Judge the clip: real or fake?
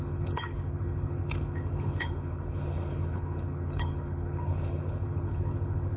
fake